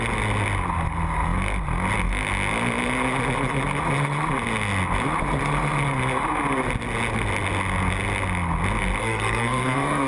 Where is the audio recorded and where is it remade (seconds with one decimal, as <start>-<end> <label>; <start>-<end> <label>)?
0.0-9.0 recorded; 9.0-10.1 remade